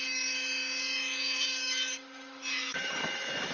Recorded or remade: remade